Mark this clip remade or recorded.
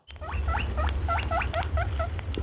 recorded